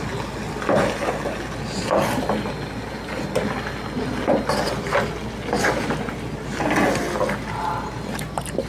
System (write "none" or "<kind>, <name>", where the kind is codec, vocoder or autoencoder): none